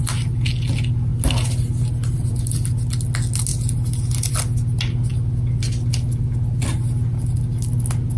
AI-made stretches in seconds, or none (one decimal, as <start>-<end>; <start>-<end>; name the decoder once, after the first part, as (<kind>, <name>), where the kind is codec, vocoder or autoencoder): none